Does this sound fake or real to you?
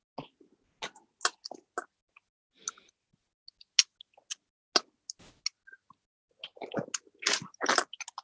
real